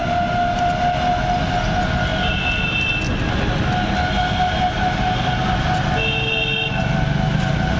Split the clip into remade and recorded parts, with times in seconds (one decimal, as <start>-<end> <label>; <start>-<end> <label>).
0.0-7.8 recorded